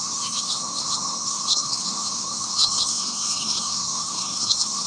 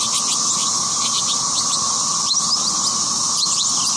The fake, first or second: first